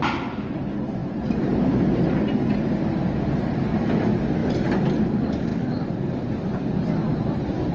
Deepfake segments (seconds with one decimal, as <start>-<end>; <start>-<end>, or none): none